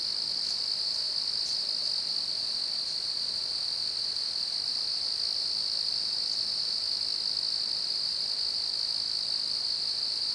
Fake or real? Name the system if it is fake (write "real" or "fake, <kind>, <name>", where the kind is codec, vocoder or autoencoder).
real